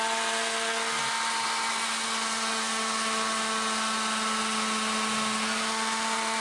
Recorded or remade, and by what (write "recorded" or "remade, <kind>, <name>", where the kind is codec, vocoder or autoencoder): recorded